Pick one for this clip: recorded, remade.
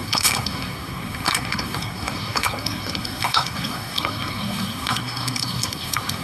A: remade